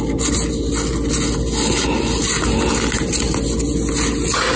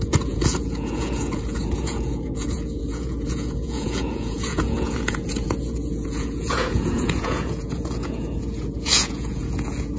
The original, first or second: first